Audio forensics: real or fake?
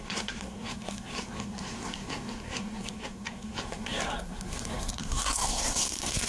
fake